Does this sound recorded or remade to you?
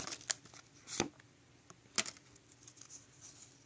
recorded